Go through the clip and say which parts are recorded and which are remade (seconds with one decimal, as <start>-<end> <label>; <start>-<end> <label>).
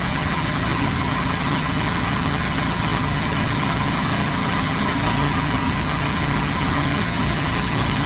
0.0-8.1 remade